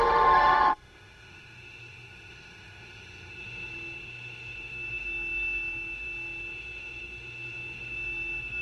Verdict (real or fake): fake